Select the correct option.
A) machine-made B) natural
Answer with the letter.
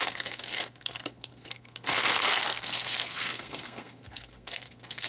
A